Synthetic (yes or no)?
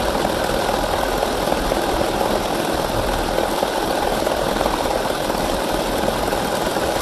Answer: no